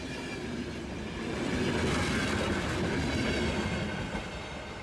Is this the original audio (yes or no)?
yes